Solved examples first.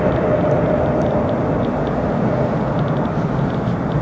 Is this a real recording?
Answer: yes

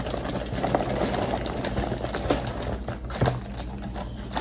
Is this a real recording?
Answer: yes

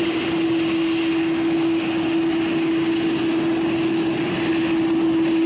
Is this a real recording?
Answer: yes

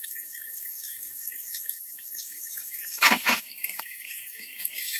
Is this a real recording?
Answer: no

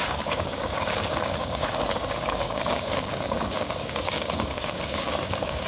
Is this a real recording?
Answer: no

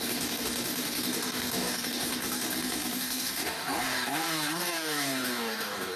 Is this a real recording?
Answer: no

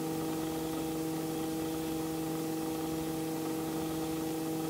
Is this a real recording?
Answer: yes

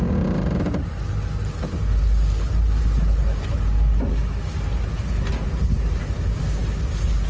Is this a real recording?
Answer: yes